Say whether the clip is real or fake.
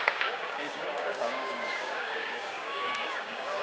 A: fake